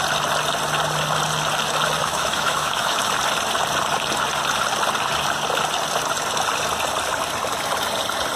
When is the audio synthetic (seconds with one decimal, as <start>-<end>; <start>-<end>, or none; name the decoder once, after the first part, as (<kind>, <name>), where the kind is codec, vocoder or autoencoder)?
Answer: 2.0-3.1 (autoencoder, DAC-VAE)